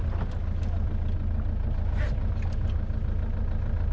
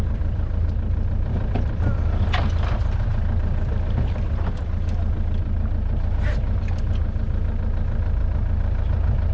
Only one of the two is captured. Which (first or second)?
first